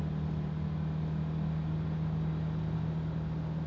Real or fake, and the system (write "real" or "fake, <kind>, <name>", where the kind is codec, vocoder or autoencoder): real